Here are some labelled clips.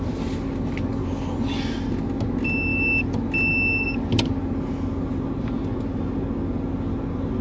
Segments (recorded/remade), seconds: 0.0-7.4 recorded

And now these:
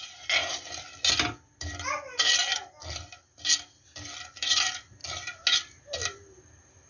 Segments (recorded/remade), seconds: 0.0-6.9 recorded

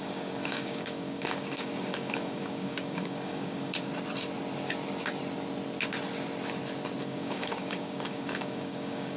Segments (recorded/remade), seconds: 0.0-3.9 remade; 3.9-7.0 recorded; 7.0-9.2 remade

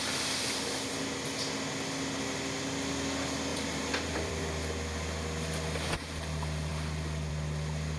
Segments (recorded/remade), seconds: 0.0-3.5 recorded; 3.5-4.4 remade; 4.4-8.0 recorded

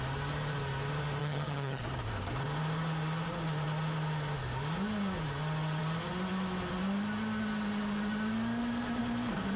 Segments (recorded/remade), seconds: 0.0-1.2 recorded; 1.2-1.8 remade; 1.8-9.6 recorded

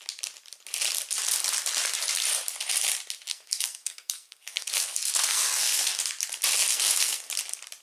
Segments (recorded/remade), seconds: 0.0-3.3 recorded; 3.3-6.0 remade; 6.0-6.7 recorded; 6.7-7.3 remade; 7.3-7.8 recorded